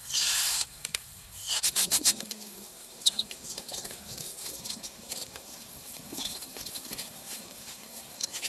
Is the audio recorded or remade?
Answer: remade